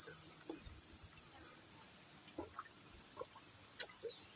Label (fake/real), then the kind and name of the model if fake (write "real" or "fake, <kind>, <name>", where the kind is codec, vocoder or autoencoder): real